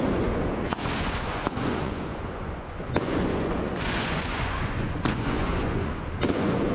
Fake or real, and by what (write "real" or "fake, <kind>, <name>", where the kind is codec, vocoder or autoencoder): fake, vocoder, Vocos